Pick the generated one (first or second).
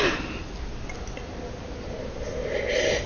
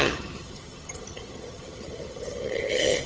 second